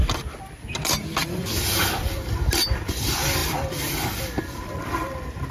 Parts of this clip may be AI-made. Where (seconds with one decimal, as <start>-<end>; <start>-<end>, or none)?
2.0-3.0; 3.4-4.6